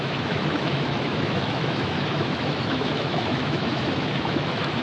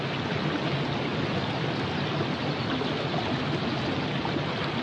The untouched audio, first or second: second